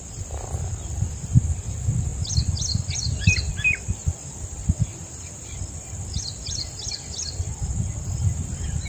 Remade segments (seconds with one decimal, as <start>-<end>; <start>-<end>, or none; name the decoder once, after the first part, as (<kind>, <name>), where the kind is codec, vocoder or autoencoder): 4.9-5.6 (vocoder, BigVGAN v2)

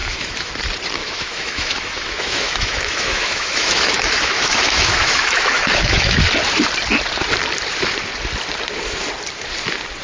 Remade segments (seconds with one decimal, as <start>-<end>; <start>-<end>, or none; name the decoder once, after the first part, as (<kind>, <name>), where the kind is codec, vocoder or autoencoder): 0.0-0.5 (autoencoder, DAC-VAE); 1.0-6.2

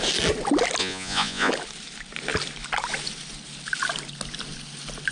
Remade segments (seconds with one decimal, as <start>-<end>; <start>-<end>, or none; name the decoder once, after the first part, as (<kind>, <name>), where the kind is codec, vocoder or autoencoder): 0.8-1.5 (vocoder, Vocos)

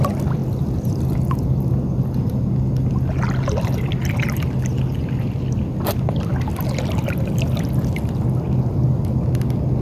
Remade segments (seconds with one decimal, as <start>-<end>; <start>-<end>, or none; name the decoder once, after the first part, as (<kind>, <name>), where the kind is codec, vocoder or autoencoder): none